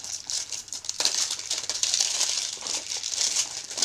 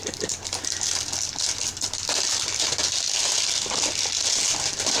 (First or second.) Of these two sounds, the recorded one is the second